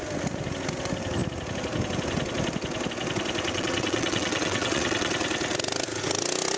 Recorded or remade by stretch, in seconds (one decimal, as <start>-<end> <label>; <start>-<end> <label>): 0.0-3.5 recorded; 3.5-5.1 remade; 5.1-6.6 recorded